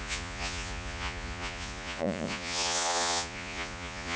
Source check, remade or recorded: remade